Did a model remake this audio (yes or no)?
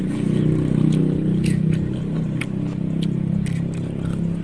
no